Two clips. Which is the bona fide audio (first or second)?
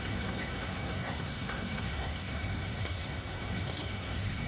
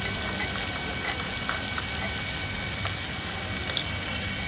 second